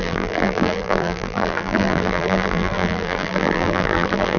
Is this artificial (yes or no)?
yes